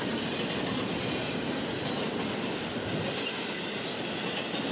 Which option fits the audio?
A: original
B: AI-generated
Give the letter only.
A